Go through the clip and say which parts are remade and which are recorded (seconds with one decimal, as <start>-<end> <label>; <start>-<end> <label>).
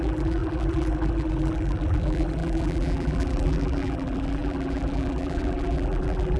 0.0-6.4 remade